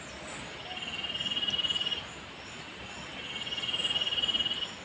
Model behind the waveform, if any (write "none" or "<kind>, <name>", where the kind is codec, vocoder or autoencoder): none